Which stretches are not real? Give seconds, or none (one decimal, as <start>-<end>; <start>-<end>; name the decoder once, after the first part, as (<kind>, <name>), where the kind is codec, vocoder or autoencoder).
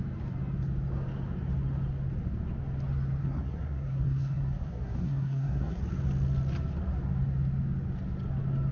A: 3.2-5.8 (codec, SNAC)